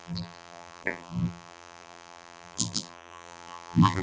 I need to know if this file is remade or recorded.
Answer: remade